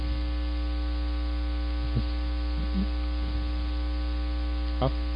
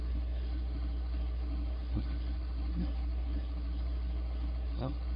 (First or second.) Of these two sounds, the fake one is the second